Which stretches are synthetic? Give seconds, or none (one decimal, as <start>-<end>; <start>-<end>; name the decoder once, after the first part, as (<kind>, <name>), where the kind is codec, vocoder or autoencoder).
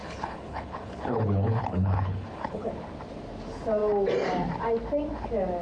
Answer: 0.0-2.7 (codec, HILCodec)